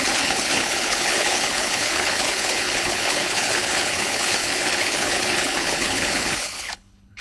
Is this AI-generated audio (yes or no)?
yes